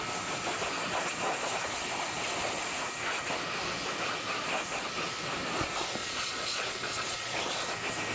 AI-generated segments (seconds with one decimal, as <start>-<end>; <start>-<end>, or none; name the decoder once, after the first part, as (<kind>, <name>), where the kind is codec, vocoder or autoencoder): 6.0-7.4 (vocoder, Vocos)